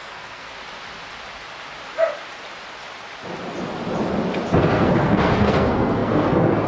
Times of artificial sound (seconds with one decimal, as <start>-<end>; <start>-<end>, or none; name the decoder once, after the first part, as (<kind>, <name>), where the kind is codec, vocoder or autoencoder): 0.0-0.5 (codec, SNAC); 4.5-6.7